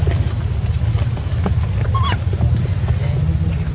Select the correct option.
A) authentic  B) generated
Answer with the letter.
A